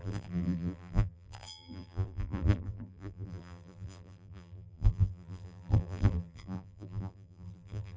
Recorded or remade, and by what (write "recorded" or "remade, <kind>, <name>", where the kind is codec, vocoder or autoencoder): remade, vocoder, BigVGAN v2